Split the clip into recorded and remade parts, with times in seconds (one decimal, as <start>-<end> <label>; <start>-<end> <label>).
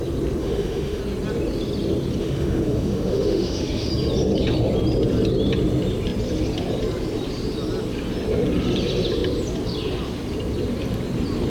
0.0-0.4 recorded; 0.4-1.0 remade; 1.0-2.2 recorded; 2.2-3.9 remade; 3.9-11.5 recorded